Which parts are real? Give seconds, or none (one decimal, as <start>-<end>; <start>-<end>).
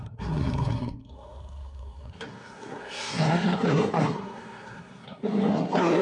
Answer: none